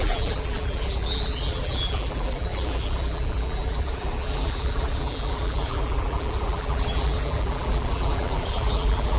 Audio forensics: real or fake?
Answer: fake